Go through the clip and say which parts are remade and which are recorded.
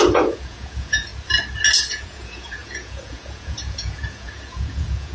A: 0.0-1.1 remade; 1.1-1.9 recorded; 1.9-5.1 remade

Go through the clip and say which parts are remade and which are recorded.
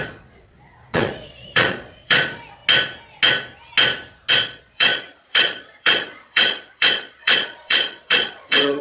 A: 0.0-2.6 remade; 2.6-4.3 recorded; 4.3-8.8 remade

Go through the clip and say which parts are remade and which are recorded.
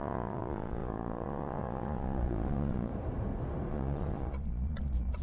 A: 0.0-2.9 remade; 2.9-3.7 recorded; 3.7-5.2 remade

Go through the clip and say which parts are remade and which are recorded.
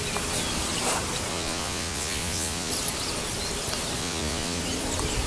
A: 0.0-1.3 recorded; 1.3-2.7 remade; 2.7-4.0 recorded; 4.0-4.6 remade; 4.6-5.3 recorded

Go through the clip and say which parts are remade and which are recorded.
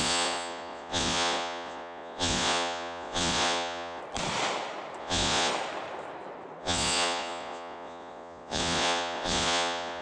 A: 0.0-4.0 remade; 4.0-5.0 recorded; 5.0-5.5 remade; 5.5-6.6 recorded; 6.6-10.0 remade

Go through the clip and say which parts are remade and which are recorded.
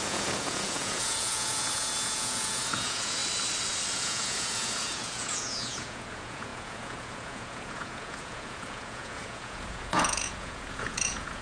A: 0.0-3.2 remade; 3.2-3.9 recorded; 3.9-11.4 remade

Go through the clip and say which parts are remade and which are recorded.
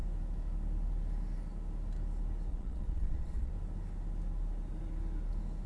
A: 0.0-2.5 recorded; 2.5-3.5 remade; 3.5-5.7 recorded